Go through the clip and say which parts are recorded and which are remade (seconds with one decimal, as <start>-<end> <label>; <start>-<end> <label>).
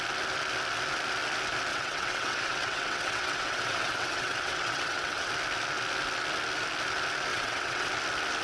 0.0-1.7 recorded; 1.7-5.3 remade; 5.3-7.3 recorded; 7.3-7.9 remade; 7.9-8.4 recorded